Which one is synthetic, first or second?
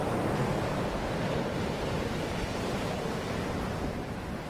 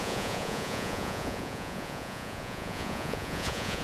second